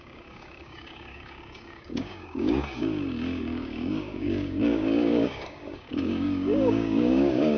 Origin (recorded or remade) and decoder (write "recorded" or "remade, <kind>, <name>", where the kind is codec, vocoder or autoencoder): remade, codec, DAC